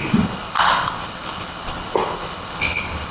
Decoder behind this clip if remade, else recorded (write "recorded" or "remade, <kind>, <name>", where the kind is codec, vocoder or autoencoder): remade, codec, HILCodec